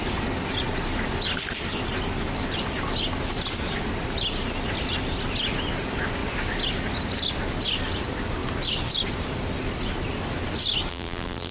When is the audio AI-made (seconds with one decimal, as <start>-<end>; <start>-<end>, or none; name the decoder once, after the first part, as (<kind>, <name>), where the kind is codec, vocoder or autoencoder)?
10.9-11.5 (vocoder, BigVGAN v2)